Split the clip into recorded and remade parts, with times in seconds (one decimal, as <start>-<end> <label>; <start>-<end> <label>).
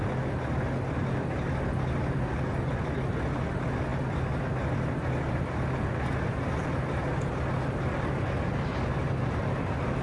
0.0-10.0 recorded